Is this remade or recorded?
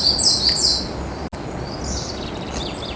recorded